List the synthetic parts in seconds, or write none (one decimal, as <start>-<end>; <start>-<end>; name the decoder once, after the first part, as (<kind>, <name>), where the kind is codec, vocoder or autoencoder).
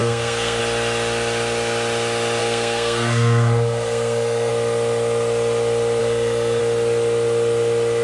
0.0-0.6 (codec, SNAC); 2.4-4.5; 6.0-6.6